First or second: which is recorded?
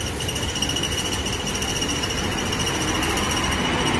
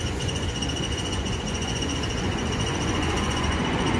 first